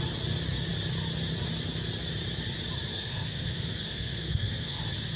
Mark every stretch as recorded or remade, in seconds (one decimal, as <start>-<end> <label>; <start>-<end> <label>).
0.0-2.9 recorded; 2.9-4.8 remade; 4.8-5.2 recorded